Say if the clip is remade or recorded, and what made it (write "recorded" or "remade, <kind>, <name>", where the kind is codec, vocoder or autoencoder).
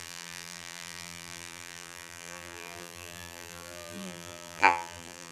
remade, vocoder, BigVGAN v2